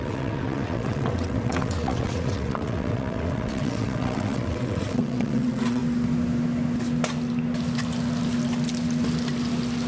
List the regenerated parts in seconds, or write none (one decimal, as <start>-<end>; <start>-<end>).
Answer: 0.0-5.8